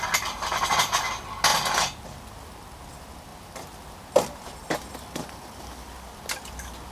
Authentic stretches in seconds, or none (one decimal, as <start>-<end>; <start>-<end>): 0.0-6.9

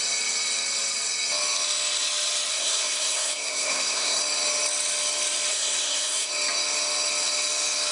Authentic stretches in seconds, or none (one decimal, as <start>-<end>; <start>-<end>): 0.0-2.5; 4.2-5.5; 6.3-7.9